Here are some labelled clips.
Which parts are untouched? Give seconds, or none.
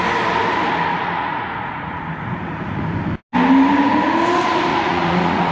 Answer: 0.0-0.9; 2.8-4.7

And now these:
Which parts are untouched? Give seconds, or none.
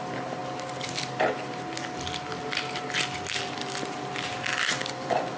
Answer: 0.0-5.4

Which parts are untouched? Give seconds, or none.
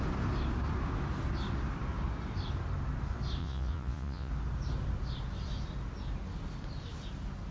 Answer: 0.0-3.4; 4.3-7.5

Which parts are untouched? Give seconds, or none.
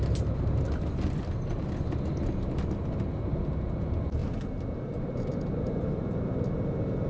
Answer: 0.5-4.2; 6.0-7.1